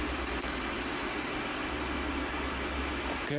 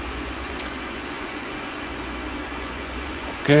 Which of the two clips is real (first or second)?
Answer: first